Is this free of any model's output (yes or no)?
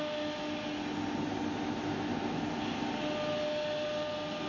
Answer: yes